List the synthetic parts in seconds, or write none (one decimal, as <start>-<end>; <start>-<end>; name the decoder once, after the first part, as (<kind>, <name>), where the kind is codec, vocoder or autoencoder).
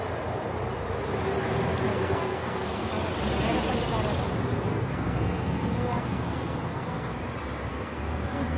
1.9-2.9 (codec, SNAC); 4.7-7.2; 7.7-8.6